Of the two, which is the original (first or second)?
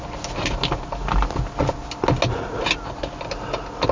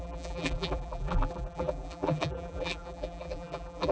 first